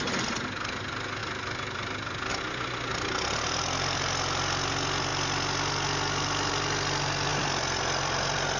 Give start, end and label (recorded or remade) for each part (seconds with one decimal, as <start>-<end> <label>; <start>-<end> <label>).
0.0-1.2 recorded; 1.2-2.3 remade; 2.3-7.3 recorded; 7.3-8.6 remade